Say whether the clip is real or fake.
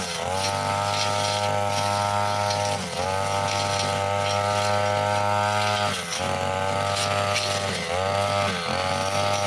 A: real